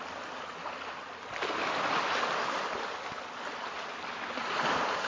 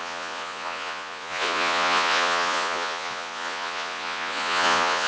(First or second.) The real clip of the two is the first